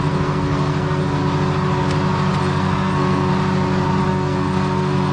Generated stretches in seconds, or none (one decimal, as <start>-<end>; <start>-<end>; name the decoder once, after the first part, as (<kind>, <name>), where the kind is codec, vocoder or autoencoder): 0.0-1.2 (codec, SNAC); 2.4-3.3; 4.0-5.1